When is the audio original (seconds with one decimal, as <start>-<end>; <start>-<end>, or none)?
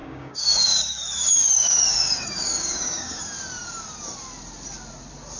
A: 3.2-5.4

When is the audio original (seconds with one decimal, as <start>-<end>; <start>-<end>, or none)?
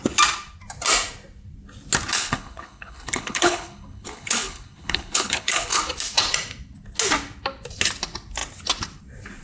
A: 0.0-2.1; 5.8-9.4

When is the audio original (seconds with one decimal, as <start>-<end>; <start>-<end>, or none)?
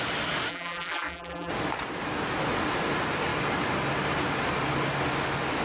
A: 0.0-0.5; 1.5-5.6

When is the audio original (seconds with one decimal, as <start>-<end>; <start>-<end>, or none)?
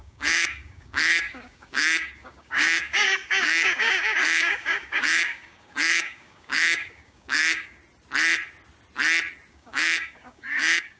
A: 7.8-9.5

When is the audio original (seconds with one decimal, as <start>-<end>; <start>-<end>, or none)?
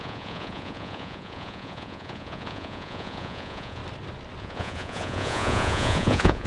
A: 3.8-4.4